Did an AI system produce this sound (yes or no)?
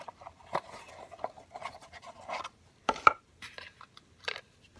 yes